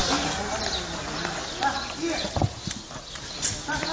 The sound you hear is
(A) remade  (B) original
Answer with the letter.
B